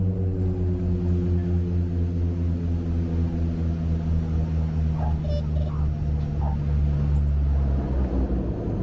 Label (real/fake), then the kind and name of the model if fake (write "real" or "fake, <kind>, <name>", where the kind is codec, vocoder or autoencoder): real